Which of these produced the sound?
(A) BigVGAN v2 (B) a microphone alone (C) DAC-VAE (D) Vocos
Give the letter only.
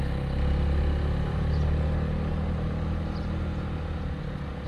B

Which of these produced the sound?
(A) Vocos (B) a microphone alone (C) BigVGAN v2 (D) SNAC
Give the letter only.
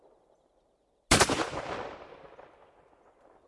B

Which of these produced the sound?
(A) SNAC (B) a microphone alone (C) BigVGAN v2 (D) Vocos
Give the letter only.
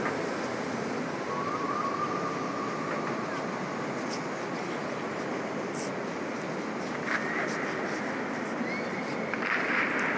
B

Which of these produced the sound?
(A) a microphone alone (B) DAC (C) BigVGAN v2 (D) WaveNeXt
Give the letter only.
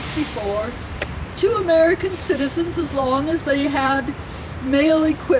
C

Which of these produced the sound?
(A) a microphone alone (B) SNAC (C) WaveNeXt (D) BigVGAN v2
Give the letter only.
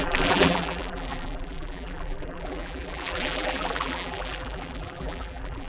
D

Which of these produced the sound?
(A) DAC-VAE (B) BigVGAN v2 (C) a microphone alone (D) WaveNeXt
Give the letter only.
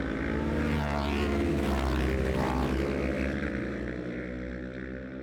C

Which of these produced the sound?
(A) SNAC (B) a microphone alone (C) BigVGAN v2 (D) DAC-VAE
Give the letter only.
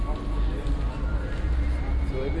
B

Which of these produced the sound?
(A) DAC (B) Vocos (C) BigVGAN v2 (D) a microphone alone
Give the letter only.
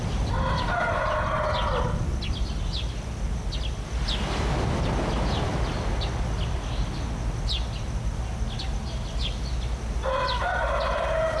D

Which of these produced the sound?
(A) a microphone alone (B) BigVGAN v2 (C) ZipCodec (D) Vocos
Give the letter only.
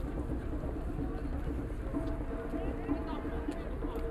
A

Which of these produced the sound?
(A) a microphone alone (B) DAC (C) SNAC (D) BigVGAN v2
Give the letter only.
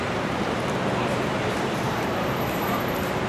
D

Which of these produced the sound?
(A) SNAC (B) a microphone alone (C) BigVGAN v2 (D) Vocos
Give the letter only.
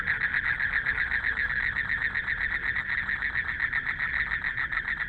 B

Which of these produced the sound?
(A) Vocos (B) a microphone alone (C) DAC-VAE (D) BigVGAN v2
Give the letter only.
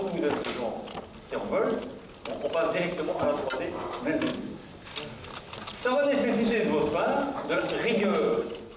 B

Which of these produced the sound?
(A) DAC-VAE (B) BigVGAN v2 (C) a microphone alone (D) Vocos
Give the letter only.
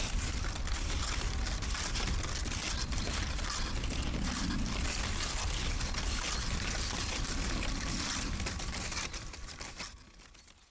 C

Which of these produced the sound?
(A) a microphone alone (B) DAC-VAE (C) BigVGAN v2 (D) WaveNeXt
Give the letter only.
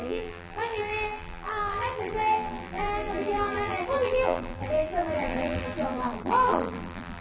C